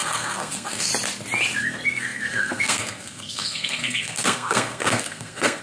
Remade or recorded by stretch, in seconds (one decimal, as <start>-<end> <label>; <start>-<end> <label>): 0.0-0.9 remade; 0.9-1.6 recorded; 1.6-5.6 remade